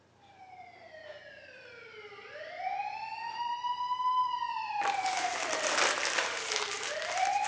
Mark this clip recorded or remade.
recorded